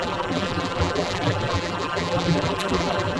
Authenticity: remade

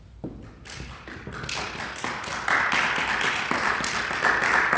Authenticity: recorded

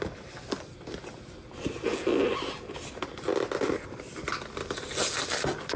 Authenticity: recorded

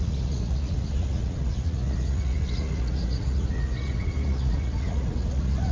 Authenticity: remade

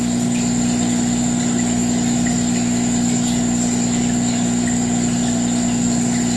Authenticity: recorded